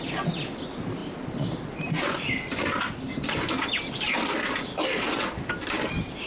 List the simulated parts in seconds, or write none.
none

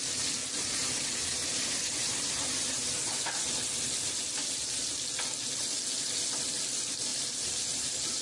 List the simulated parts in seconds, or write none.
0.4-3.4; 4.4-5.0; 7.1-8.2

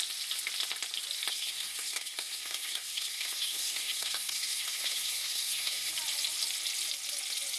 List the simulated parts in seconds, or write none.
1.3-5.9

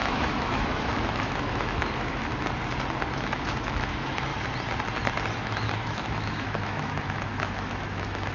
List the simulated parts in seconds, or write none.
0.0-2.3; 3.1-4.3; 5.4-8.3

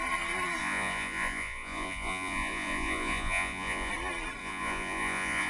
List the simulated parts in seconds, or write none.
0.6-3.9; 4.4-5.5